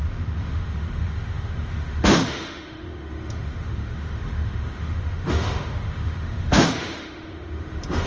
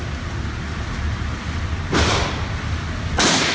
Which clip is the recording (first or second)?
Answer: second